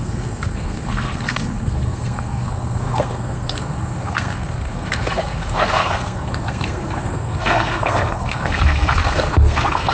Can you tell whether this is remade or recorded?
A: remade